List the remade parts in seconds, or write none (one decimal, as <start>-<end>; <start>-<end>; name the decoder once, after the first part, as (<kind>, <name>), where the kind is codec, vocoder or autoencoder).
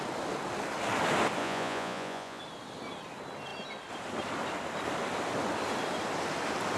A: 1.4-2.4 (vocoder, Vocos)